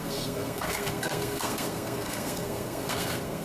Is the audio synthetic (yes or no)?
yes